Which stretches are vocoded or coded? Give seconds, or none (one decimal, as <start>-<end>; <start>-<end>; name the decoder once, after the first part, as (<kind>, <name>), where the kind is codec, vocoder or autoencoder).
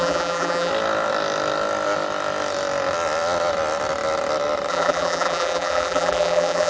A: 0.0-0.7 (vocoder, BigVGAN v2); 4.7-6.7